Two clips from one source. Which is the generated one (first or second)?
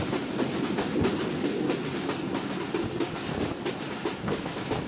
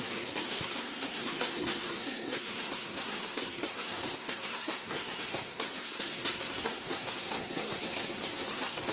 second